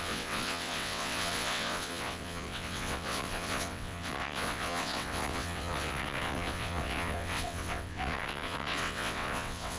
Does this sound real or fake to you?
fake